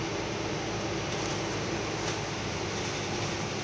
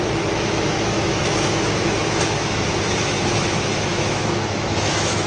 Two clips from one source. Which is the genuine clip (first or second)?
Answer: first